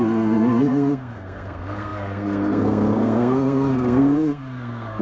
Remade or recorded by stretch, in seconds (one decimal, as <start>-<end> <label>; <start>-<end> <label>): 0.0-5.0 remade